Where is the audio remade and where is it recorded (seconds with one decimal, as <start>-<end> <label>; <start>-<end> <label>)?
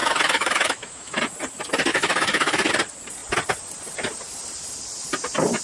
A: 0.0-1.2 remade; 1.2-1.9 recorded; 1.9-2.7 remade; 2.7-5.6 recorded